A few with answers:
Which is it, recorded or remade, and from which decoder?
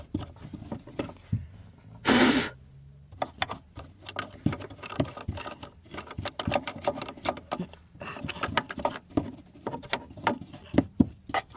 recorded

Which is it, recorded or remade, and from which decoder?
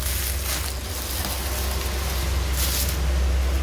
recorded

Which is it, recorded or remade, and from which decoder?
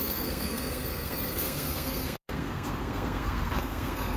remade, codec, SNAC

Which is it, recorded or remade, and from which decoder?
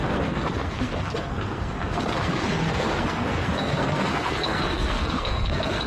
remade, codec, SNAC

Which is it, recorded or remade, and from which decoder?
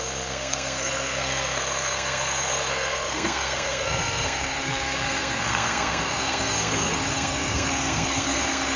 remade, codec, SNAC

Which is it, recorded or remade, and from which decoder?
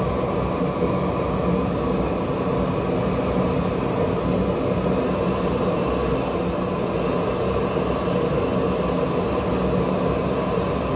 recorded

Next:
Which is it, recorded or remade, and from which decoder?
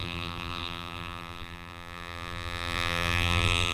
remade, vocoder, BigVGAN v2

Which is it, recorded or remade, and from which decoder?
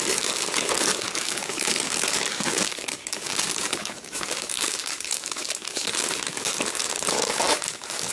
remade, codec, DAC